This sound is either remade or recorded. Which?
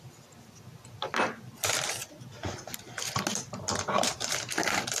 recorded